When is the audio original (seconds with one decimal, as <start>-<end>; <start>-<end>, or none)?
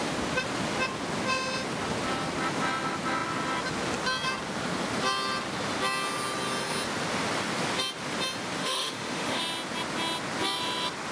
0.0-8.6; 9.4-11.1